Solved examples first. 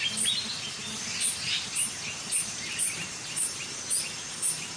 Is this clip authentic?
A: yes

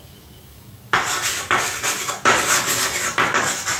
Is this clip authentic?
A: no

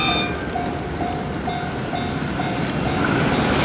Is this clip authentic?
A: yes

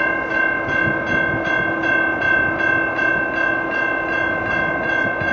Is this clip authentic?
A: yes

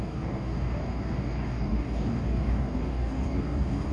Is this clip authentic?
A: no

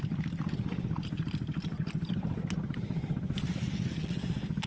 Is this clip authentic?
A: yes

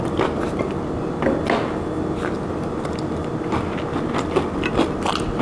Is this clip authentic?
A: yes